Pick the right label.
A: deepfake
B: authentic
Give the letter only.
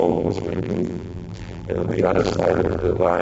A